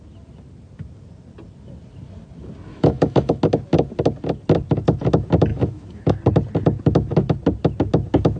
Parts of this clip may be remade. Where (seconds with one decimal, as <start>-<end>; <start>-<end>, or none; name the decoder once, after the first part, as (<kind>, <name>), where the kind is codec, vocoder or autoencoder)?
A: 2.7-3.4 (autoencoder, DAC-VAE); 5.5-6.1

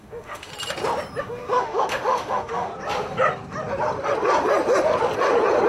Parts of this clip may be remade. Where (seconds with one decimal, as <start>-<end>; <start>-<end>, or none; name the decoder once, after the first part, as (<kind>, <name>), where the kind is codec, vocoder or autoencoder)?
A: 0.0-0.5 (autoencoder, DAC-VAE); 1.2-2.7

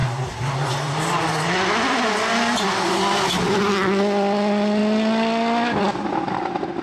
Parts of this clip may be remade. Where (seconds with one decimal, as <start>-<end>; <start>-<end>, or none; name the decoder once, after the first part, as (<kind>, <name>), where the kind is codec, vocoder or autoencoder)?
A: none

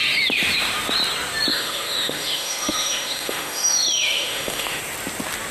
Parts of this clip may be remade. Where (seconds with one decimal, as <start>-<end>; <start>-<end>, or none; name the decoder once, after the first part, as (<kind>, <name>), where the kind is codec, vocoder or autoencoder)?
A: 1.5-4.8 (autoencoder, DAC-VAE)

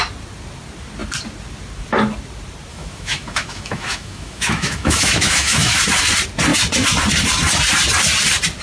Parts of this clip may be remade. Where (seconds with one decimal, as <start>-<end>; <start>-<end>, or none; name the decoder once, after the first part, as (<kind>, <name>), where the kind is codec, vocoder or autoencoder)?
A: 2.7-5.8 (autoencoder, DAC-VAE)

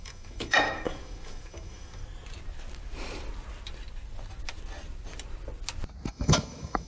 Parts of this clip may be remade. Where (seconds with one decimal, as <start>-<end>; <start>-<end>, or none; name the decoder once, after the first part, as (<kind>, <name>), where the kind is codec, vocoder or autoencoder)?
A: 0.0-2.0 (autoencoder, DAC-VAE); 6.1-6.9